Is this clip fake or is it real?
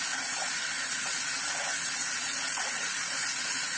fake